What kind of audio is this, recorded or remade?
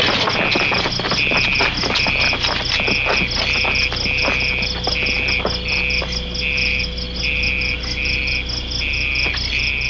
recorded